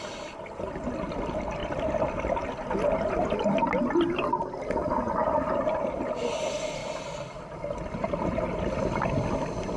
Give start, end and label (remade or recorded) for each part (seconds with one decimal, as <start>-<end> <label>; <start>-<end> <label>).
0.0-1.6 recorded; 1.6-2.1 remade; 2.1-6.8 recorded; 6.8-7.6 remade; 7.6-9.8 recorded